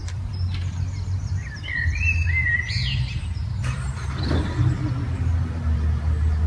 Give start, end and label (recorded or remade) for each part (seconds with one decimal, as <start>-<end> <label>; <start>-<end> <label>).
0.0-3.6 remade; 3.6-6.5 recorded

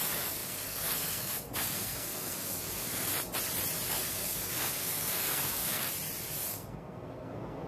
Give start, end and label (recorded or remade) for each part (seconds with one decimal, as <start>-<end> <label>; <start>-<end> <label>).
0.0-3.1 remade; 3.1-3.9 recorded; 3.9-5.9 remade; 5.9-6.5 recorded; 6.5-7.7 remade

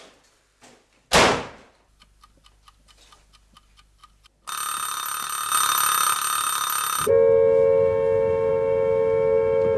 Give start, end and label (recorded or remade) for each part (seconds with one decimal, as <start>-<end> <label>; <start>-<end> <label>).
0.0-9.8 recorded

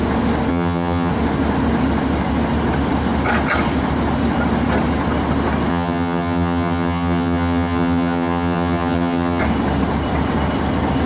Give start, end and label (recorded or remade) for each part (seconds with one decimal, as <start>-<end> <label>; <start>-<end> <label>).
0.0-0.5 recorded; 0.5-1.1 remade; 1.1-5.7 recorded; 5.7-9.4 remade; 9.4-11.1 recorded